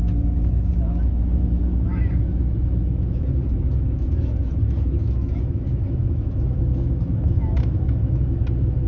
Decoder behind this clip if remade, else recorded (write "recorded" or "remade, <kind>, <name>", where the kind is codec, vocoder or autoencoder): remade, autoencoder, DAC-VAE